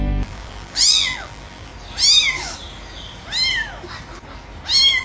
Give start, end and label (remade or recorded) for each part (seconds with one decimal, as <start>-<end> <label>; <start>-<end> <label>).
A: 0.0-1.7 remade; 1.7-5.0 recorded